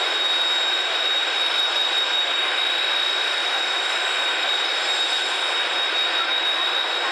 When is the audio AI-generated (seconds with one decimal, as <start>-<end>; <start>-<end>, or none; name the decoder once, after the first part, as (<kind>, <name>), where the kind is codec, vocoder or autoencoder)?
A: none

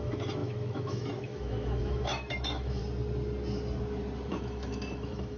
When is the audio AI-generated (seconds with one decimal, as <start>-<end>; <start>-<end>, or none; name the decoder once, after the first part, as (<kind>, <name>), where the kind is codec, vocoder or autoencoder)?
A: 0.0-2.8 (autoencoder, DAC-VAE); 4.3-5.4

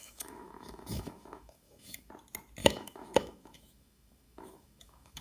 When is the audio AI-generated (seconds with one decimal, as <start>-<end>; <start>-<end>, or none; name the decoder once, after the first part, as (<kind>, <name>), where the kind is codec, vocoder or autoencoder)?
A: 0.0-2.1 (autoencoder, DAC-VAE); 2.6-5.2

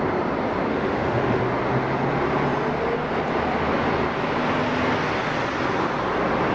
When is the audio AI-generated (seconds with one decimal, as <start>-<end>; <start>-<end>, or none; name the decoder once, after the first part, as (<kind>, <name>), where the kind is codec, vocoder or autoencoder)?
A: 0.7-1.4 (autoencoder, DAC-VAE)

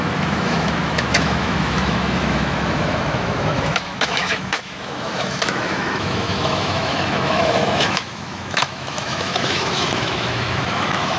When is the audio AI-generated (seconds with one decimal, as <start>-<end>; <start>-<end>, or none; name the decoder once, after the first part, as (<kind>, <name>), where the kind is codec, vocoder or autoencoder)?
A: 0.0-11.2 (autoencoder, DAC-VAE)

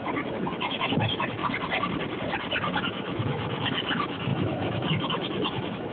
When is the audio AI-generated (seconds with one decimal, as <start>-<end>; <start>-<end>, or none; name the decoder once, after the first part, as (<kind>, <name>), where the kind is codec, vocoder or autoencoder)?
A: 0.0-1.4 (autoencoder, DAC-VAE); 2.8-5.9

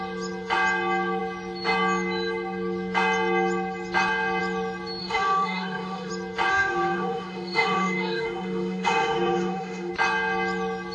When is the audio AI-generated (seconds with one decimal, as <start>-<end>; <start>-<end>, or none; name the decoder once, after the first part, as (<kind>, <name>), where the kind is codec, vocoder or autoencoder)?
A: 5.0-6.1 (autoencoder, DAC-VAE); 6.5-9.9